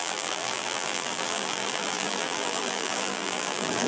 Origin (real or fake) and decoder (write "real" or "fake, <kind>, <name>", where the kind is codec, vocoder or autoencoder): fake, vocoder, BigVGAN v2